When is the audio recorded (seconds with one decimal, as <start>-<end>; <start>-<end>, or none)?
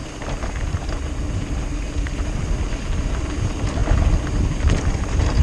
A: 0.0-5.4